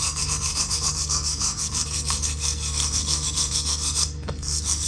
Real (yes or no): no